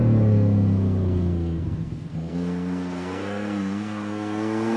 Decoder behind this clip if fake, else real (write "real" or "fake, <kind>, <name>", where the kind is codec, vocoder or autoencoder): fake, codec, SNAC